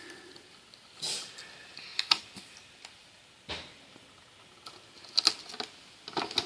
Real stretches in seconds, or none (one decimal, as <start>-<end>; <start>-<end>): 0.0-6.5